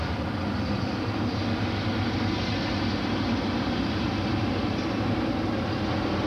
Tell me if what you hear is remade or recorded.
recorded